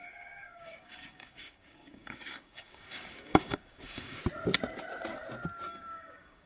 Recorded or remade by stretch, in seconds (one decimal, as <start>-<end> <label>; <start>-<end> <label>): 0.0-4.2 remade; 4.2-5.7 recorded; 5.7-6.5 remade